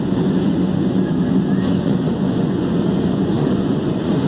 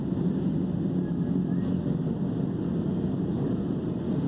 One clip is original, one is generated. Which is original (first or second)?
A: second